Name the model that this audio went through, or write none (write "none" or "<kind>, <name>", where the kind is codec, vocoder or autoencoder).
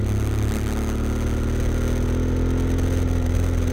none